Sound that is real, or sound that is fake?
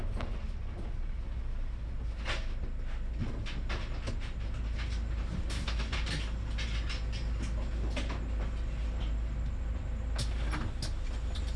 real